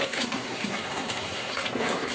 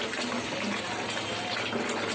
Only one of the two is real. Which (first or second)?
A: second